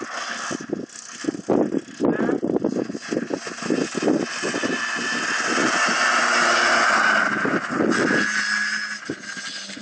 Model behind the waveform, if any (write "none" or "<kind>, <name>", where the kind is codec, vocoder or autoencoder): none